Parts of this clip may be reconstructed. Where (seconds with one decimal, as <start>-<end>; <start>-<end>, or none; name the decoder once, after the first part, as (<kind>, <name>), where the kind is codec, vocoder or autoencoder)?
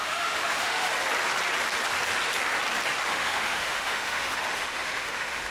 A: 0.0-0.9 (autoencoder, DAC-VAE); 3.1-5.5